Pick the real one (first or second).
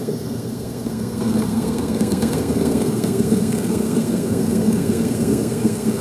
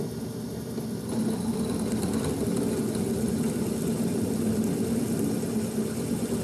second